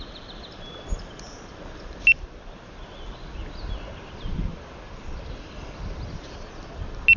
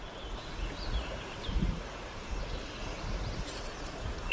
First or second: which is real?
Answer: first